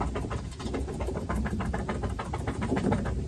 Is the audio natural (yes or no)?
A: no